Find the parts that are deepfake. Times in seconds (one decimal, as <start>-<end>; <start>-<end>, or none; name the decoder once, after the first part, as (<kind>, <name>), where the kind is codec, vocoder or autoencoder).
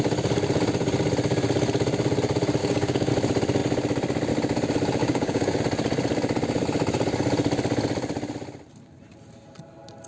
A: 2.6-3.1 (codec, DAC); 5.0-5.6